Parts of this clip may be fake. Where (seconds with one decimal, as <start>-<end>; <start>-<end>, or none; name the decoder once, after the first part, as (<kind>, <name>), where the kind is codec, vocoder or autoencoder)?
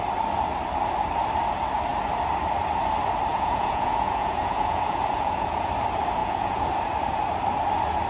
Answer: 3.3-5.7 (vocoder, Vocos); 6.2-6.7